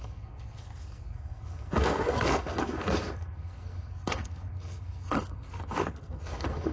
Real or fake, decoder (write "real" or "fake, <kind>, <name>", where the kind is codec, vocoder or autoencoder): fake, codec, SNAC